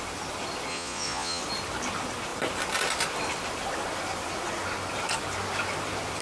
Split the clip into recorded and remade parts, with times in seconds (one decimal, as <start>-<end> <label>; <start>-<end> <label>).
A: 0.0-0.7 recorded; 0.7-1.4 remade; 1.4-6.2 recorded